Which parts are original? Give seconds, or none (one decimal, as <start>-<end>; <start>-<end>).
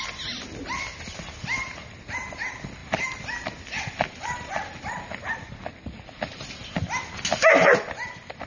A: 0.0-8.5